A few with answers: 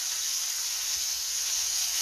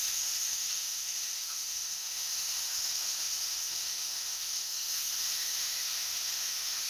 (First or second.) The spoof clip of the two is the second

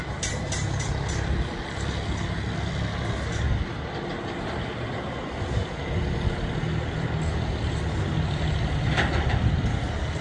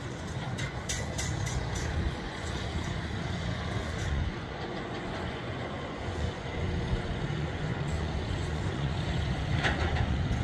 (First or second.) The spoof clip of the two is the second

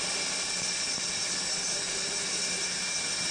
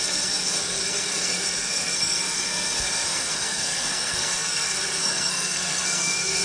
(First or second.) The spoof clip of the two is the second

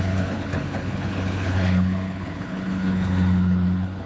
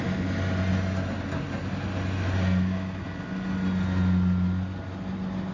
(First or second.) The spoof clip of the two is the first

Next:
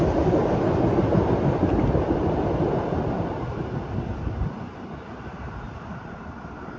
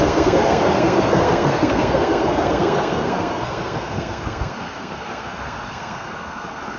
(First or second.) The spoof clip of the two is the second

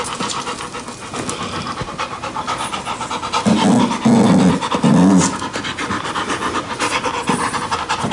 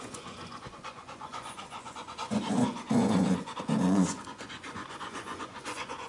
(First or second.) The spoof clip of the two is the second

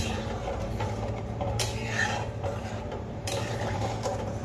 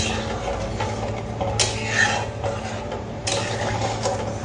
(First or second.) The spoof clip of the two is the first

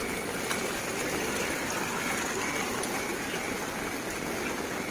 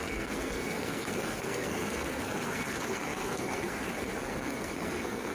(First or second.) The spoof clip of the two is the second